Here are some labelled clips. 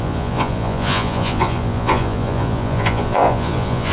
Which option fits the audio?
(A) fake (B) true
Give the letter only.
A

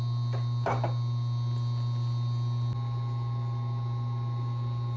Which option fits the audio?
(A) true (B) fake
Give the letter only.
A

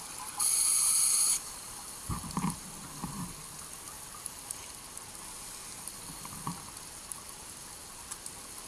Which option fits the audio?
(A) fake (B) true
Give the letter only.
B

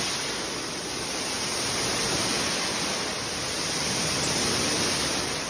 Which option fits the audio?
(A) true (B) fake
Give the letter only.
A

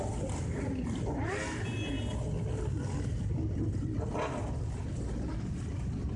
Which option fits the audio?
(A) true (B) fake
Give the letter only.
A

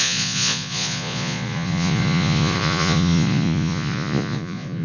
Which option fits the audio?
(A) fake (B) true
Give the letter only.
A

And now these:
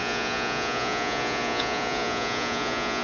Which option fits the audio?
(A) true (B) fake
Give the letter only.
B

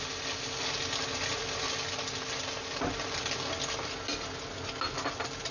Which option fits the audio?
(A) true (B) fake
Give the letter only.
A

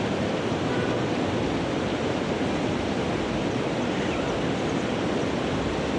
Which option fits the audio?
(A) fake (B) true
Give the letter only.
B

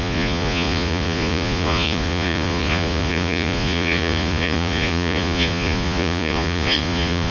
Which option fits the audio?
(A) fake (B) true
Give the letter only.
A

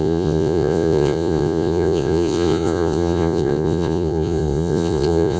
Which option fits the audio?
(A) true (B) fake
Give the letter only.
B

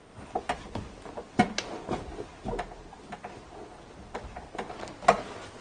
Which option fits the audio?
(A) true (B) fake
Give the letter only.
A